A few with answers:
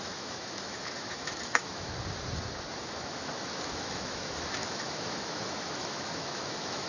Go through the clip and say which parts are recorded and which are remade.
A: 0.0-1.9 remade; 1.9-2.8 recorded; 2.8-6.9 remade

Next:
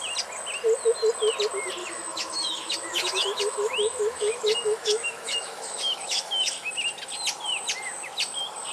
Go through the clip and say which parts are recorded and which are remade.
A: 0.0-1.8 recorded; 1.8-6.7 remade; 6.7-8.7 recorded

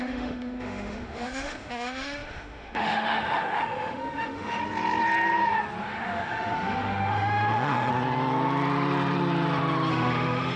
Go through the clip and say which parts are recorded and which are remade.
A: 0.0-4.6 remade; 4.6-5.8 recorded; 5.8-7.9 remade; 7.9-9.9 recorded; 9.9-10.6 remade

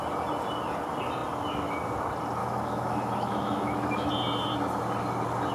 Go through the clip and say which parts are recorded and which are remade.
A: 0.0-2.4 recorded; 2.4-4.1 remade; 4.1-5.5 recorded

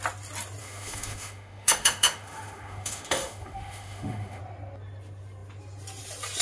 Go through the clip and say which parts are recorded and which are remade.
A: 0.0-0.6 recorded; 0.6-4.4 remade; 4.4-6.4 recorded

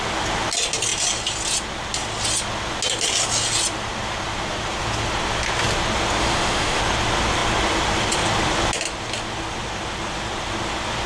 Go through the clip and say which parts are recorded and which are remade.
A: 0.0-6.2 recorded; 6.2-6.8 remade; 6.8-11.1 recorded